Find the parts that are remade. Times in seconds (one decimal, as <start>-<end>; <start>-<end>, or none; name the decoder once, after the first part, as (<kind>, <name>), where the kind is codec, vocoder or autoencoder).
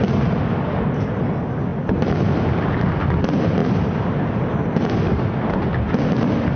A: none